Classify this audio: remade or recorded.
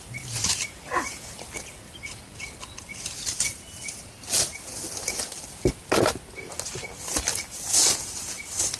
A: recorded